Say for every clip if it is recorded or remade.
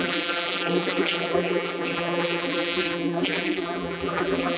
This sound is remade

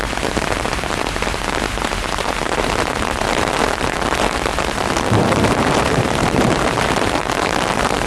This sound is remade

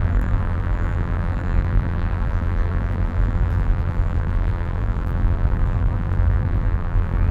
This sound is remade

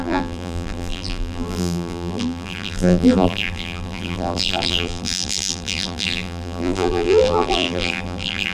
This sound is remade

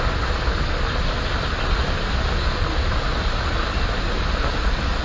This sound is recorded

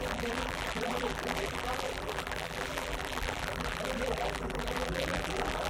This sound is remade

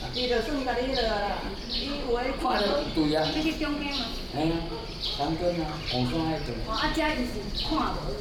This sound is recorded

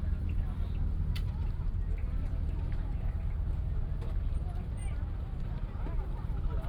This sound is remade